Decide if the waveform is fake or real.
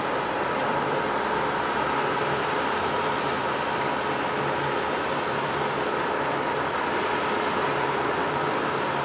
fake